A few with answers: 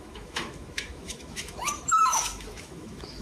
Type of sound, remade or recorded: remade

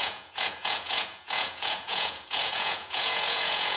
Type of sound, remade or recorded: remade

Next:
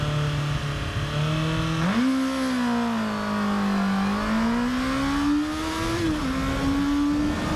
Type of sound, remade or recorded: recorded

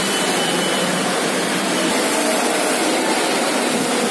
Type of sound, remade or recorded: recorded